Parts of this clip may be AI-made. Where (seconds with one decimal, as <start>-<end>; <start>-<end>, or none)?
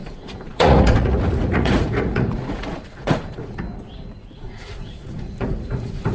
0.0-3.6; 4.4-6.1